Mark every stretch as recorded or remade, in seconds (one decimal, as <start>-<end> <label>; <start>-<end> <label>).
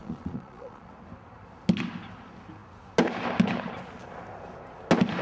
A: 0.0-0.9 remade; 0.9-5.2 recorded